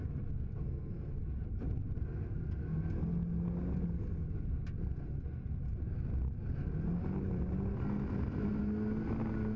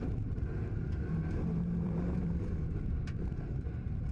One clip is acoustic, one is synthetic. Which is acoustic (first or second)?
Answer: first